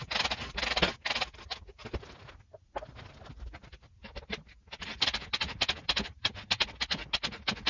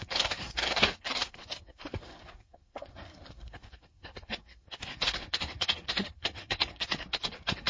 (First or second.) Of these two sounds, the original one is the first